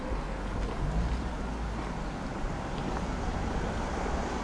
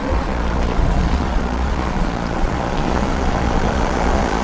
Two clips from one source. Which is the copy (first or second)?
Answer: second